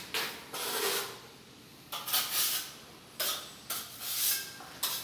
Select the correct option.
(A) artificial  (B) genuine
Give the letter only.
B